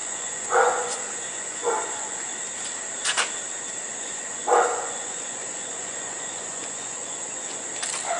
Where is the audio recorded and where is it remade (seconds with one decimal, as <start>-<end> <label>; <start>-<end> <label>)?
0.0-2.3 remade; 2.3-3.9 recorded; 3.9-7.7 remade; 7.7-8.2 recorded

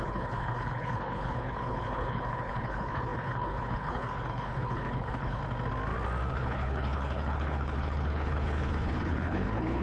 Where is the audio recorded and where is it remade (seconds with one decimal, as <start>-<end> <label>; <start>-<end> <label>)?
0.0-5.4 remade; 5.4-6.3 recorded; 6.3-9.8 remade

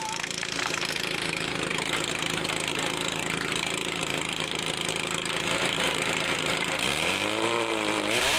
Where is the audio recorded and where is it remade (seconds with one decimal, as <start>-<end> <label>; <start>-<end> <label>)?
0.0-8.4 remade

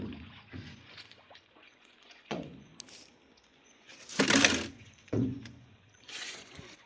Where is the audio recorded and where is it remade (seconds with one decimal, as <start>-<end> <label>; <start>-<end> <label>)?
0.0-2.7 remade; 2.7-3.3 recorded; 3.3-3.9 remade; 3.9-4.7 recorded; 4.7-6.9 remade

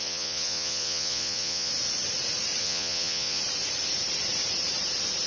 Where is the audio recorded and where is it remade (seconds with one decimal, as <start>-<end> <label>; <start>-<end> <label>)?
0.0-1.7 remade; 1.7-2.6 recorded; 2.6-3.4 remade; 3.4-5.3 recorded

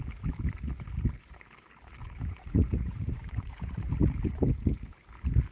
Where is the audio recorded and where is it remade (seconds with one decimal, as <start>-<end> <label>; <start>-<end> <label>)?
0.0-2.0 recorded; 2.0-3.9 remade; 3.9-5.5 recorded

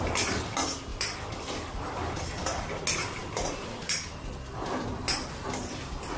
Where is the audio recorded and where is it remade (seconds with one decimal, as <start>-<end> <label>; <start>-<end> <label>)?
0.0-0.9 recorded; 0.9-2.7 remade; 2.7-3.2 recorded; 3.2-5.6 remade; 5.6-6.2 recorded

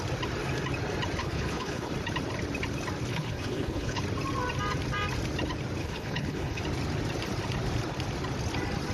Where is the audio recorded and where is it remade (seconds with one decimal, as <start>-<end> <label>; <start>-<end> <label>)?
0.0-1.2 recorded; 1.2-1.9 remade; 1.9-3.1 recorded; 3.1-4.0 remade; 4.0-5.8 recorded; 5.8-6.6 remade; 6.6-8.9 recorded